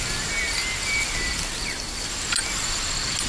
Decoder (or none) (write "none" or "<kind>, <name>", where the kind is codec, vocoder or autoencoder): none